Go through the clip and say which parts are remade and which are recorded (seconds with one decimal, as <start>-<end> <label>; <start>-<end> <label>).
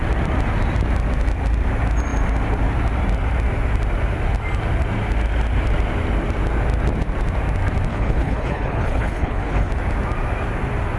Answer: 0.0-7.9 recorded; 7.9-9.7 remade; 9.7-11.0 recorded